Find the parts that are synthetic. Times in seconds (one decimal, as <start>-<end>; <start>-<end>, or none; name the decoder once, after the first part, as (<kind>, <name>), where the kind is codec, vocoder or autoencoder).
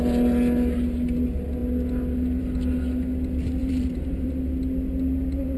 3.6-4.3 (vocoder, BigVGAN v2)